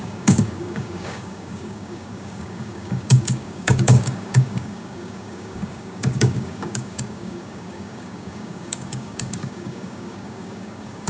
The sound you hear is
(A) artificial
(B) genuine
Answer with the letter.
A